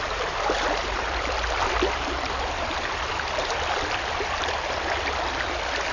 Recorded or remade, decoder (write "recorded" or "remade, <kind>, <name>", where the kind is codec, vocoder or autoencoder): remade, vocoder, BigVGAN v2